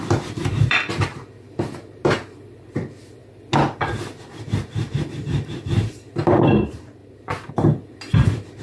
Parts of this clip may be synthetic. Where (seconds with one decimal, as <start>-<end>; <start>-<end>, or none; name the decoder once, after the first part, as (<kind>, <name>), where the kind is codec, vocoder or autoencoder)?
0.0-3.2 (vocoder, BigVGAN v2); 4.2-7.0; 7.5-8.6